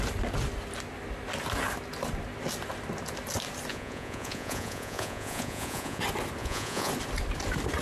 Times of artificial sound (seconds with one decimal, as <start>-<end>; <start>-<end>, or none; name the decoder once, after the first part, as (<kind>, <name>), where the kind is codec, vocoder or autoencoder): 3.7-6.0 (vocoder, Vocos); 6.4-6.9